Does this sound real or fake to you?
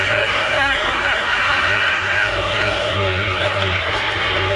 fake